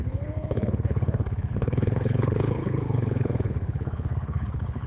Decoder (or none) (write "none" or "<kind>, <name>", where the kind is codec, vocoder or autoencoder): codec, HILCodec